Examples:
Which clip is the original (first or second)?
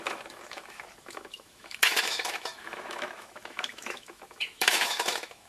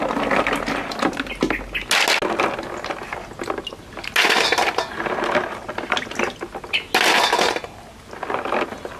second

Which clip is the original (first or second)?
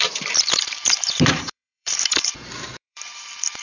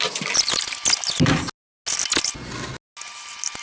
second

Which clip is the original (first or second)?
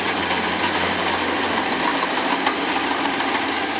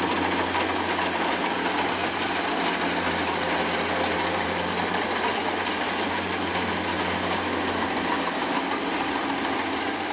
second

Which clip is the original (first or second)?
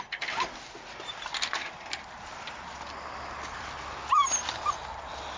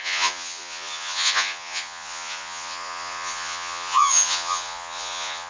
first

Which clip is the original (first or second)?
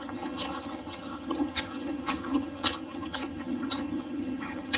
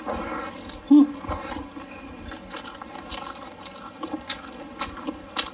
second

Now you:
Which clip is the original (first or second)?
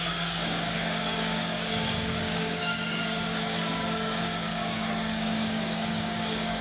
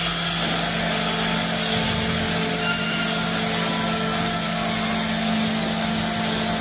second